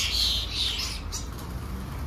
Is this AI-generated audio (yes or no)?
no